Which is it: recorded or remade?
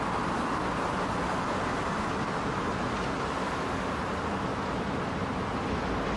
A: recorded